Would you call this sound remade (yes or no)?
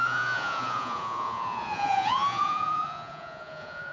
yes